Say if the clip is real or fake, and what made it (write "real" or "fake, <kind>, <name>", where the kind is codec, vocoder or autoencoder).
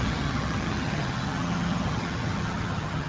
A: fake, vocoder, HiFi-GAN